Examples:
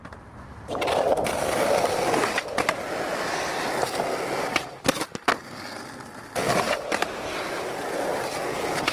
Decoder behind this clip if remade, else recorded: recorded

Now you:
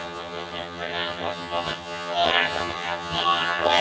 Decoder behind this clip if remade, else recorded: remade, vocoder, HiFi-GAN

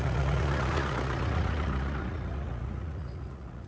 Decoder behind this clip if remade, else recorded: remade, vocoder, Vocos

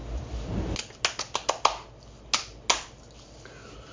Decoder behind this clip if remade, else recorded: recorded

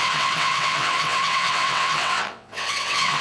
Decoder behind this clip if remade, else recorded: remade, vocoder, WaveNeXt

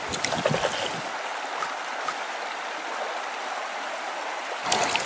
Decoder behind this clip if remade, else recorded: recorded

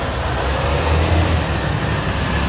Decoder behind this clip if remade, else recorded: recorded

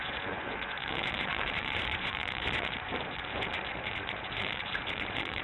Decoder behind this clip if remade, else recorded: remade, vocoder, Vocos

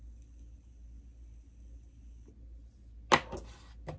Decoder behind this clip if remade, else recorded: recorded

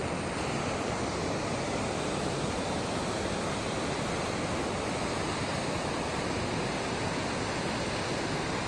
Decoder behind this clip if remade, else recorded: recorded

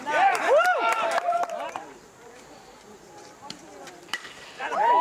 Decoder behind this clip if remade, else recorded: remade, vocoder, BigVGAN v2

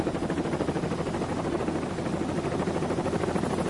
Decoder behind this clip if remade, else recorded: recorded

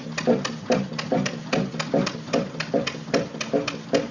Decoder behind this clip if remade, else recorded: recorded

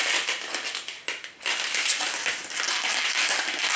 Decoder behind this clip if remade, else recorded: recorded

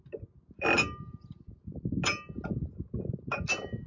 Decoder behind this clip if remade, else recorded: recorded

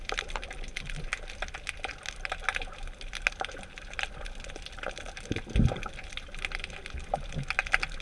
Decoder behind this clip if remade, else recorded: recorded